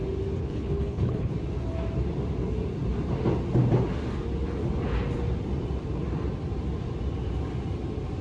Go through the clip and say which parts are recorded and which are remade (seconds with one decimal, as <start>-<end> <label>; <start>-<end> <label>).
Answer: 0.0-0.4 recorded; 0.4-1.3 remade; 1.3-8.2 recorded

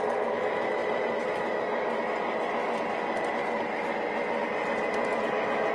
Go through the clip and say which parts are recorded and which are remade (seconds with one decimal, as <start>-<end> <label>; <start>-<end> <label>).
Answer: 0.0-5.7 recorded

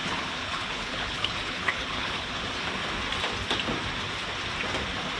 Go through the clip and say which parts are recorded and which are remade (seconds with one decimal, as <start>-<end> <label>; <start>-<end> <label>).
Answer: 0.0-2.4 remade; 2.4-5.2 recorded

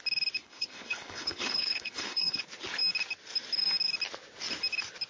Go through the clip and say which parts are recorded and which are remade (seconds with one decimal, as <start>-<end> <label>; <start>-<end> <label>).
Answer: 0.0-0.4 recorded; 0.4-2.4 remade; 2.4-5.1 recorded

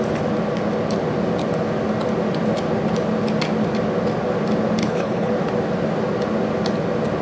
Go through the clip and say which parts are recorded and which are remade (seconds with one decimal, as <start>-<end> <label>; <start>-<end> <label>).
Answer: 0.0-4.8 recorded; 4.8-5.3 remade; 5.3-7.2 recorded

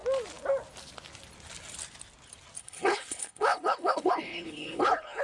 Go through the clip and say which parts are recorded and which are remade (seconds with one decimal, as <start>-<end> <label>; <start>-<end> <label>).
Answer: 0.0-2.6 recorded; 2.6-5.2 remade